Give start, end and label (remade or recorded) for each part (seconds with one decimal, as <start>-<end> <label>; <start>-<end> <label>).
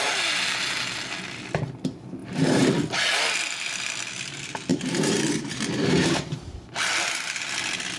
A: 0.0-2.2 recorded; 2.2-2.7 remade; 2.7-4.7 recorded; 4.7-6.6 remade; 6.6-8.0 recorded